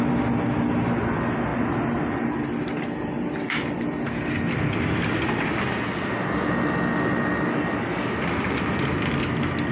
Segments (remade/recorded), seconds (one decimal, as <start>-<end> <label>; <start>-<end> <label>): 0.0-9.7 recorded